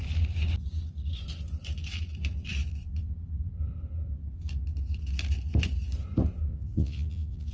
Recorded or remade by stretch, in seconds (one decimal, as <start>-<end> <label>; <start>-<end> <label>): 0.0-6.5 recorded; 6.5-7.5 remade